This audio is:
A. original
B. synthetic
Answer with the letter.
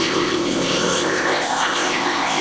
B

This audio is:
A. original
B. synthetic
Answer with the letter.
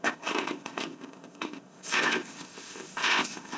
B